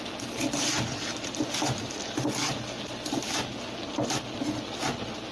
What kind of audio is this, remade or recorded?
recorded